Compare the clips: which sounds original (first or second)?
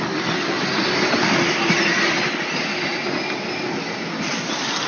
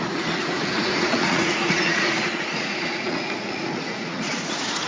first